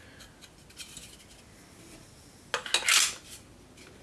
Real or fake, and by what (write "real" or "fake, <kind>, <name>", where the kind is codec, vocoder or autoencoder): real